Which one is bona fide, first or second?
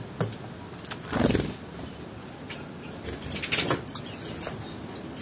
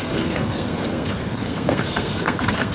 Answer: first